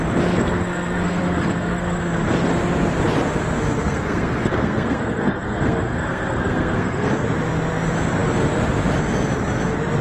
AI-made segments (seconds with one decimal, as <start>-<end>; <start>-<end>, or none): 0.4-2.0; 3.8-7.1